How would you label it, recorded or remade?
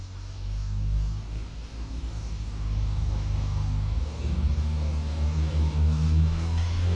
remade